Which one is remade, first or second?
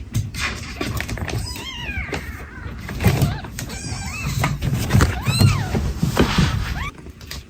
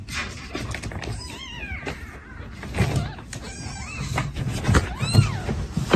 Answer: first